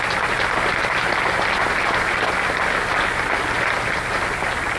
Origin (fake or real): real